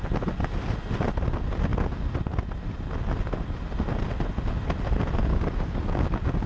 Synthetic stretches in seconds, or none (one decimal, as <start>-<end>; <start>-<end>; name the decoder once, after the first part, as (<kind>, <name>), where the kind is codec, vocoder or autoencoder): 5.3-6.5 (codec, DAC)